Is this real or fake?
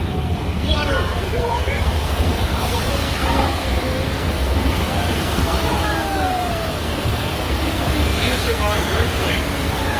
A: fake